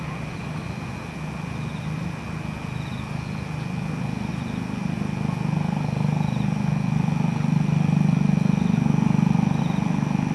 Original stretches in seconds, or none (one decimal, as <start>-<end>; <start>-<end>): 0.0-10.3